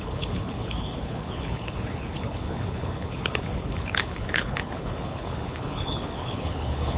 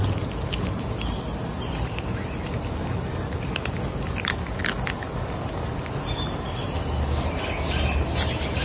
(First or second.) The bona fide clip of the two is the second